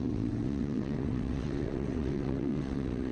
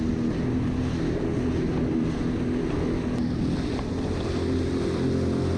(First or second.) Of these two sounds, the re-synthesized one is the first